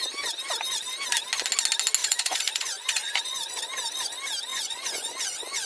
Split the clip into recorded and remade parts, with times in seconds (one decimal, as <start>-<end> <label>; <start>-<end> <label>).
0.0-2.0 recorded; 2.0-3.6 remade; 3.6-4.5 recorded; 4.5-5.7 remade